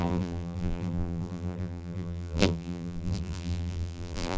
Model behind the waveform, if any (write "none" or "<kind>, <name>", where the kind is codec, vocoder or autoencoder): vocoder, BigVGAN v2